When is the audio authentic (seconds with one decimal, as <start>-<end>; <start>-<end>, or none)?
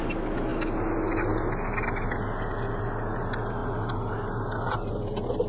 0.0-5.5